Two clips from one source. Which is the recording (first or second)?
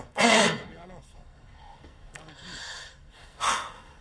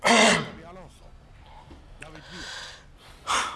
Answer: second